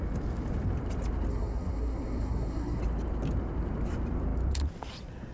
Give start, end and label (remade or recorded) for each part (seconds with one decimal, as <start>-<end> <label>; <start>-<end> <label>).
0.0-1.3 recorded; 1.3-2.8 remade; 2.8-5.3 recorded